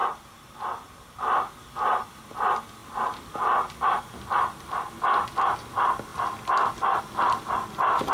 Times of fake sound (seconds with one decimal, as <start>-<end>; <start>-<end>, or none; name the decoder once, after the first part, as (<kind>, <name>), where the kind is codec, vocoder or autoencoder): 2.8-5.0 (vocoder, BigVGAN v2)